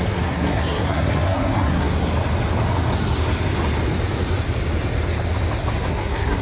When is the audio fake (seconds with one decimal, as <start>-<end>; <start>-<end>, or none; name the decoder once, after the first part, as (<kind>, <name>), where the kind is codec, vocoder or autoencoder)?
0.0-2.1 (codec, SNAC); 5.9-6.4

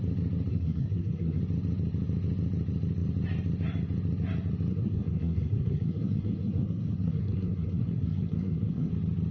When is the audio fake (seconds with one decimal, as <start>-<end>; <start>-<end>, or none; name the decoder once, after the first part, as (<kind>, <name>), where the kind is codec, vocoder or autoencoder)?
0.5-1.4 (codec, SNAC); 4.7-8.9

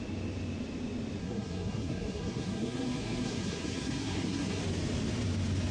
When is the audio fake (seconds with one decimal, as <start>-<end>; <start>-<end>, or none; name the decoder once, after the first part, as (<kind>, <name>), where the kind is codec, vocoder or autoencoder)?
1.2-4.6 (codec, SNAC)

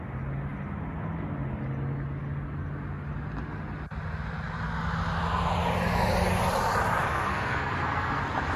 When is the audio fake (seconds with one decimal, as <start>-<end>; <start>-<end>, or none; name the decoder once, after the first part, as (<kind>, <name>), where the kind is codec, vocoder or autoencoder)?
7.1-8.2 (codec, SNAC)

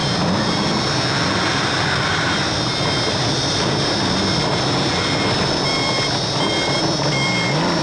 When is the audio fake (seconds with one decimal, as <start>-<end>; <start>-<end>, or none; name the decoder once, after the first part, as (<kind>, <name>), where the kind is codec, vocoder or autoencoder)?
none

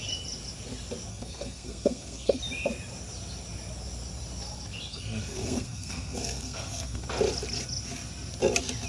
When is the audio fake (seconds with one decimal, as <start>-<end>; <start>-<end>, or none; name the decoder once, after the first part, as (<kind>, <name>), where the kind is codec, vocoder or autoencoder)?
1.1-2.4 (codec, SNAC); 4.9-7.0

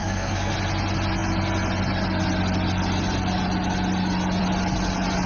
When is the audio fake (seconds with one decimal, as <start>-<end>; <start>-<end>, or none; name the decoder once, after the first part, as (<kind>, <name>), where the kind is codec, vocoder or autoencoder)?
0.0-0.5 (codec, SNAC)

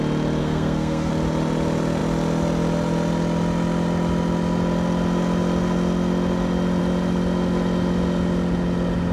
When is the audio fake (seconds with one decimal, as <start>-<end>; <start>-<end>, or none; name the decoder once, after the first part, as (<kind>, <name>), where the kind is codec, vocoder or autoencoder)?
0.4-1.1 (codec, SNAC)